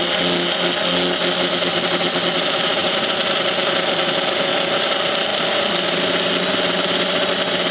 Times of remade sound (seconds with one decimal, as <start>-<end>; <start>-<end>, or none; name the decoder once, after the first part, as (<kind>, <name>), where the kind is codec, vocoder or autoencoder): none